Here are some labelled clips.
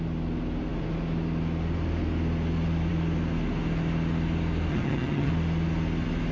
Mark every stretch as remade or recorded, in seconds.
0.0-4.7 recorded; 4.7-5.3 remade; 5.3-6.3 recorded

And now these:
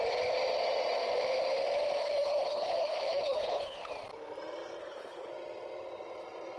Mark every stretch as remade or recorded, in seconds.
0.0-2.0 recorded; 2.0-3.9 remade; 3.9-4.8 recorded; 4.8-5.3 remade; 5.3-6.6 recorded